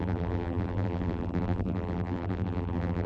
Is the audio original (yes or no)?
no